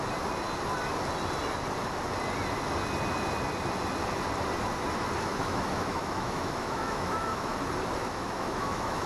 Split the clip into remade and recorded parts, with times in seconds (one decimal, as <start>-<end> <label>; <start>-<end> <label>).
0.0-5.3 recorded; 5.3-7.6 remade; 7.6-8.0 recorded; 8.0-9.1 remade